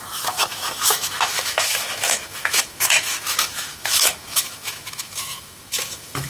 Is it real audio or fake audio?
fake